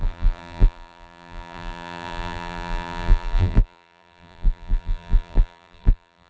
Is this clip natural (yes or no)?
no